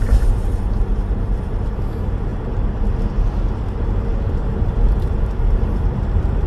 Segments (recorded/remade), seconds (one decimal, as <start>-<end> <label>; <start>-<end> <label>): 0.0-1.7 remade; 1.7-6.5 recorded